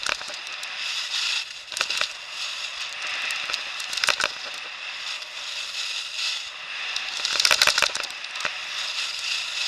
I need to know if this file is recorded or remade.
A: recorded